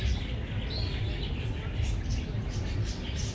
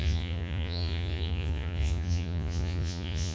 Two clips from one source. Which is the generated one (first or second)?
second